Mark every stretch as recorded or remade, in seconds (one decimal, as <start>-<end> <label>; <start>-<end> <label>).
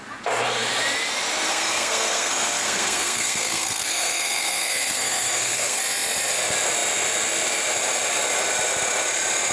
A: 0.0-1.5 recorded; 1.5-5.8 remade; 5.8-9.5 recorded